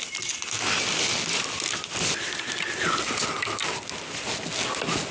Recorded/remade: recorded